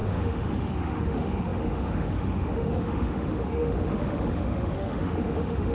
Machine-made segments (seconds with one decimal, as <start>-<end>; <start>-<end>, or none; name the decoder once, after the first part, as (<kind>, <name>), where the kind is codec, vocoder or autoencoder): 0.0-5.7 (autoencoder, DAC-VAE)